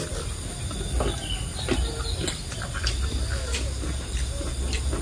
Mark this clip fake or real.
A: real